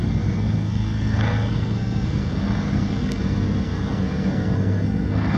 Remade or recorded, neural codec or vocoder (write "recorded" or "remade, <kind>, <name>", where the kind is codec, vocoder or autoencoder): remade, codec, SNAC